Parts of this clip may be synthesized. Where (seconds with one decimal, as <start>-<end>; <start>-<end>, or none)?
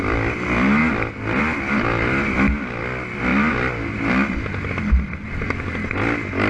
none